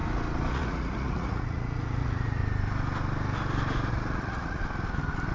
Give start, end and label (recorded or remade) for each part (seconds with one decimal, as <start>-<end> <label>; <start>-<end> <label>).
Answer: 0.0-0.5 recorded; 0.5-2.4 remade; 2.4-3.9 recorded; 3.9-4.6 remade; 4.6-5.3 recorded